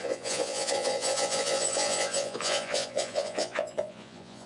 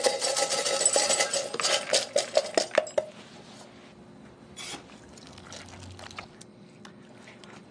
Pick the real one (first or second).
second